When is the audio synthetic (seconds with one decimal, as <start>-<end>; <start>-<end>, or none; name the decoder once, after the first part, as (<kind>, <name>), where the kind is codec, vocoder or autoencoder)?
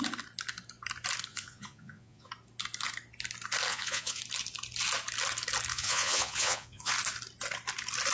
1.3-2.3 (vocoder, Vocos); 3.7-4.2; 5.7-6.9